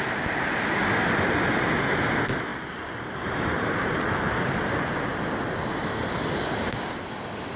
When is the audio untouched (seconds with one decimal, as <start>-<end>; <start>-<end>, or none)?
0.0-2.5; 4.9-7.6

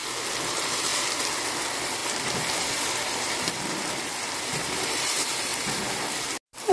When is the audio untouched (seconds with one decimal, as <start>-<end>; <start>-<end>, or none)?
0.0-0.5; 5.5-6.7